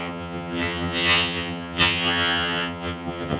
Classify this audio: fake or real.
fake